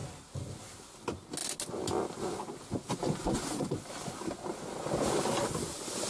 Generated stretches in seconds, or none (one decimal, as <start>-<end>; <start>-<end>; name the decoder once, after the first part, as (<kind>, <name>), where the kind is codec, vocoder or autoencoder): none